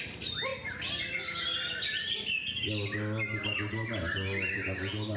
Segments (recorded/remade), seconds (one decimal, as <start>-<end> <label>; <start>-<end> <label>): 0.0-5.2 recorded